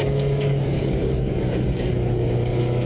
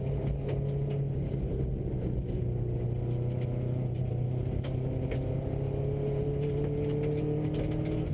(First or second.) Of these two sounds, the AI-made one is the first